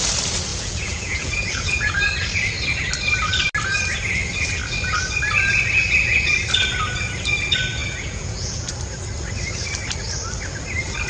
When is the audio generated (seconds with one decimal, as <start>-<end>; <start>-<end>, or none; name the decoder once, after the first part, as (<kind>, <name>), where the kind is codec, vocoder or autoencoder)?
0.5-1.9 (vocoder, Vocos); 7.8-8.7